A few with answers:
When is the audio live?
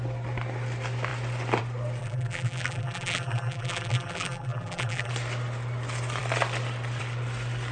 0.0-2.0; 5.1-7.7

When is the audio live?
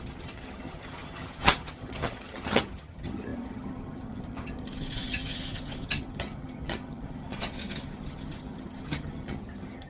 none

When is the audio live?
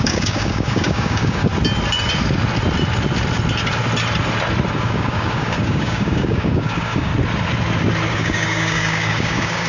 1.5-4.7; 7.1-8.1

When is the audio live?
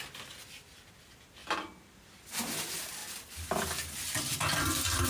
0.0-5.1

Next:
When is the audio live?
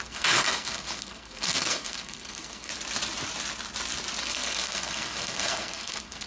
2.7-4.2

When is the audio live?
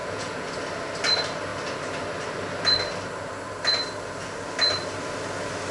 0.5-5.7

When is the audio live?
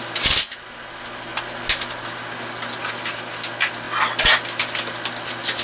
0.0-5.6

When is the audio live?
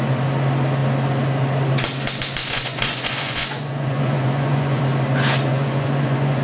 0.0-2.4; 4.8-5.5